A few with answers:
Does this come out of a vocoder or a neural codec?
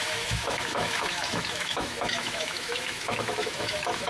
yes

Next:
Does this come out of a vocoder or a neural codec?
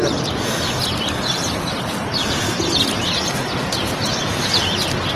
no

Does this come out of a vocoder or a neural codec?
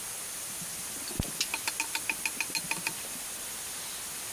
no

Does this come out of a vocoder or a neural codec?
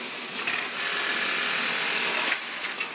no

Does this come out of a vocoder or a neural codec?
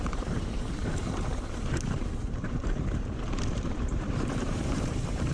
yes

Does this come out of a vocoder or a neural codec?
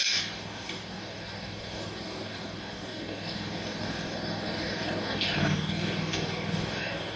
yes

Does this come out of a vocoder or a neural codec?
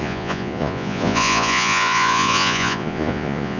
yes